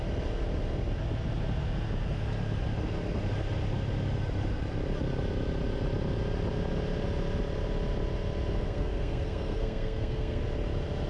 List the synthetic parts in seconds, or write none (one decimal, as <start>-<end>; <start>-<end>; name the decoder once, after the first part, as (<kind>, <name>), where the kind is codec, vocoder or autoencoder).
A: 8.6-10.4 (codec, SNAC)